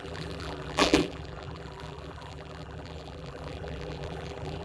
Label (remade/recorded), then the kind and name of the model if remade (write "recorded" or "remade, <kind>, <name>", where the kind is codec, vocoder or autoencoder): remade, vocoder, BigVGAN v2